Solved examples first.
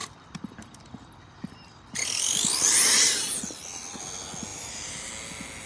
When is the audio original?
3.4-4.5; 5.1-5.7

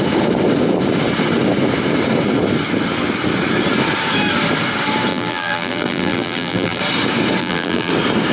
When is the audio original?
0.0-5.1; 6.8-7.4; 7.9-8.3

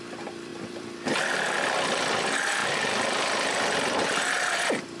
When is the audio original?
none

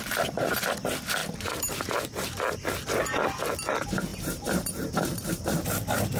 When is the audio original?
0.0-1.2; 1.7-4.1; 5.2-6.2

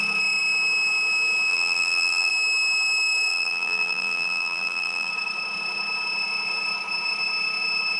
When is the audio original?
0.0-1.5; 2.3-3.3; 5.1-8.0

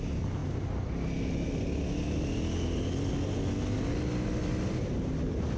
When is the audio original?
0.0-5.6

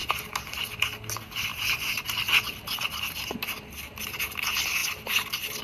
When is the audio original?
0.0-1.5; 4.2-4.8